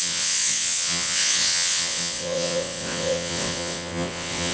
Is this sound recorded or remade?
remade